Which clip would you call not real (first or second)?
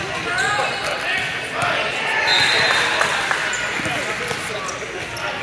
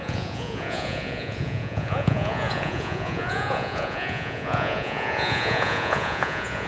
second